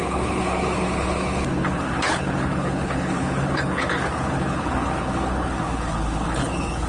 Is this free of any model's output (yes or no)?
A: no